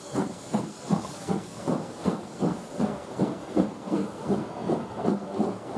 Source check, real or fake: fake